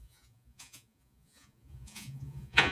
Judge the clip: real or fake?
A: fake